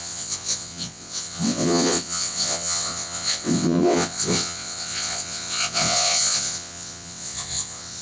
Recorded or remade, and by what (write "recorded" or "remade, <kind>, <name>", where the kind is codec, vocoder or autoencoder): remade, vocoder, WaveNeXt